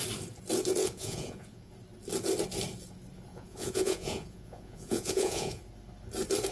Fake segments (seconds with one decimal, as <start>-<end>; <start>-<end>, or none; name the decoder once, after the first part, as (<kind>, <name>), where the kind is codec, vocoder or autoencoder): 0.8-1.7 (vocoder, Vocos); 3.3-5.6